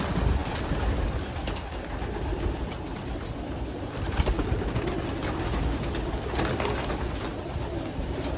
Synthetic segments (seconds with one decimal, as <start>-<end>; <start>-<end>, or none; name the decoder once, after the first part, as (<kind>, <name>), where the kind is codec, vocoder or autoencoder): none